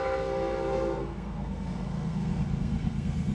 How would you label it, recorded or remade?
remade